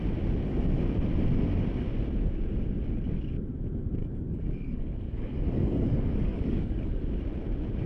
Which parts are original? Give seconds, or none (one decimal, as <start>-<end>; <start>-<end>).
0.0-4.0; 6.9-7.9